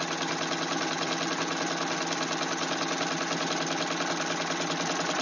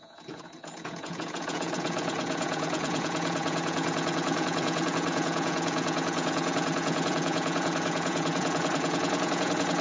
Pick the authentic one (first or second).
first